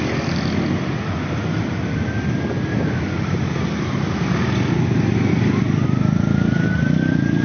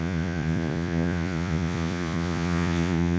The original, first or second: first